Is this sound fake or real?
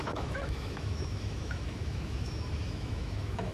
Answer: fake